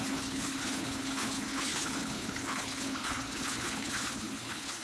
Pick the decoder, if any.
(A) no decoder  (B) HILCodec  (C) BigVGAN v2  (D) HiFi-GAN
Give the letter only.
B